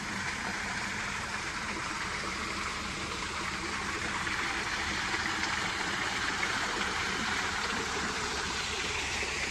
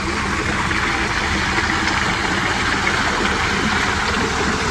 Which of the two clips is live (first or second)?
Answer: second